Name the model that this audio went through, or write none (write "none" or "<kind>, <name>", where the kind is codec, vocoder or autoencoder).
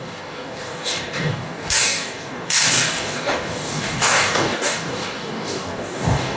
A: codec, DAC